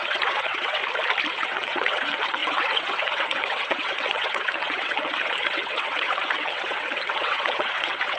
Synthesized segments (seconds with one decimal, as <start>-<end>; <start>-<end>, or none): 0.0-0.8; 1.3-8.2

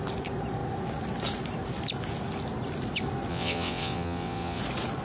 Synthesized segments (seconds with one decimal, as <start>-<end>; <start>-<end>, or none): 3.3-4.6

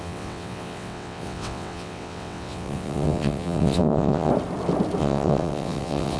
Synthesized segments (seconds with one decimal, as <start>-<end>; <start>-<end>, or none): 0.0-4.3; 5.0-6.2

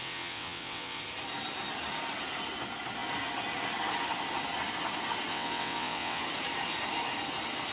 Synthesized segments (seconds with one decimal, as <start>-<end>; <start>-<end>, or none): 0.0-1.0; 5.3-6.2

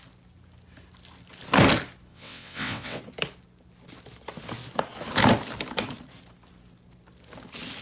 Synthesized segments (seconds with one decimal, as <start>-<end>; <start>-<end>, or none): 2.1-3.0